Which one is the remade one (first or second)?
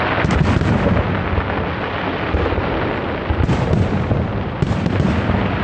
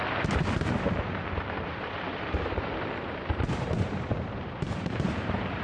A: second